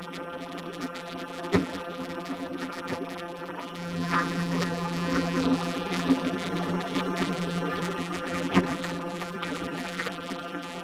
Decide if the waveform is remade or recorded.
remade